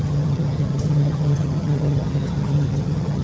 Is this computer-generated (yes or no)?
yes